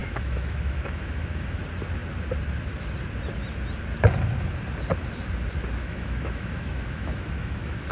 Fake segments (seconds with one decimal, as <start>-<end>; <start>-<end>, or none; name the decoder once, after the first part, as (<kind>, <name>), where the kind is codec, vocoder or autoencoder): 0.0-1.6 (autoencoder, DAC-VAE); 5.8-7.9

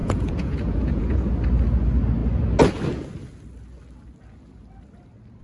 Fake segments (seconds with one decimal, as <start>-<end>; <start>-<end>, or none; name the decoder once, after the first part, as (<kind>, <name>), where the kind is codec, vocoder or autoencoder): 0.0-1.3 (vocoder, Vocos)